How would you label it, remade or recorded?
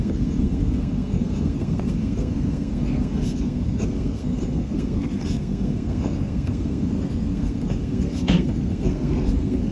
remade